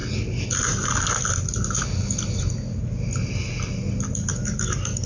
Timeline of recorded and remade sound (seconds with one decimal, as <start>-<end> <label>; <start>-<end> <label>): 0.0-4.3 recorded; 4.3-5.1 remade